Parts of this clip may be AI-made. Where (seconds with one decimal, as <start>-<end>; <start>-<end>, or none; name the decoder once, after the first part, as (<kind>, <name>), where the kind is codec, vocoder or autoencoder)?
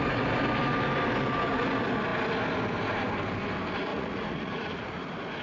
3.9-5.0 (vocoder, Vocos)